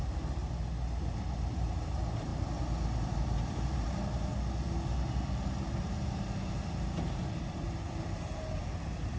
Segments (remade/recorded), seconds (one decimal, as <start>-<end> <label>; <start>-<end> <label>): 0.0-0.4 remade; 0.4-1.3 recorded; 1.3-2.3 remade; 2.3-3.1 recorded; 3.1-4.3 remade; 4.3-5.5 recorded; 5.5-9.2 remade